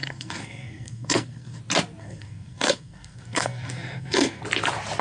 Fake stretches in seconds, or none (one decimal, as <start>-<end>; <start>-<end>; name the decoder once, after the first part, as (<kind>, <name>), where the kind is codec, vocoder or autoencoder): 0.0-1.6 (codec, SNAC); 2.0-4.4